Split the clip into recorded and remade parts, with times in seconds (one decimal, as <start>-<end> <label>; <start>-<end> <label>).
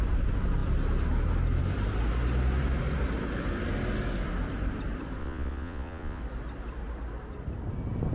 0.0-5.2 recorded; 5.2-6.2 remade; 6.2-8.1 recorded